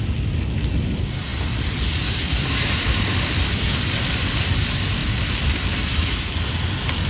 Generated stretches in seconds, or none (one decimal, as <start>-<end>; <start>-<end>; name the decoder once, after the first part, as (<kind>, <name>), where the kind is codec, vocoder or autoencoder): none